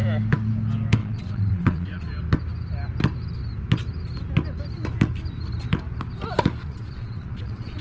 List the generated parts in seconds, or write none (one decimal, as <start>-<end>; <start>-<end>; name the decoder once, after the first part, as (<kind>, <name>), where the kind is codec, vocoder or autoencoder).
1.0-2.0 (vocoder, WaveNeXt); 6.6-7.8